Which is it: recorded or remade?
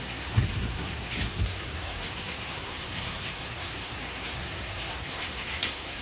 remade